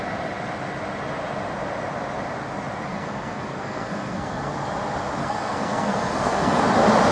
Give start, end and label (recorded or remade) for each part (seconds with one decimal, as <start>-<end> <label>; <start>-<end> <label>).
0.0-2.9 recorded; 2.9-4.5 remade; 4.5-5.2 recorded; 5.2-6.6 remade; 6.6-7.1 recorded